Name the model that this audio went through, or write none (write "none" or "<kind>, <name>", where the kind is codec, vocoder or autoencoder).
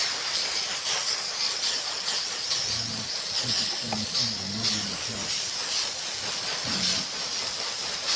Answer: none